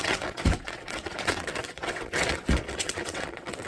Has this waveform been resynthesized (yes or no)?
yes